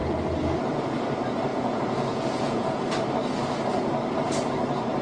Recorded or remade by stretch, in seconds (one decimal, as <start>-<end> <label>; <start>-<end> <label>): 0.0-1.5 recorded; 1.5-2.8 remade; 2.8-5.0 recorded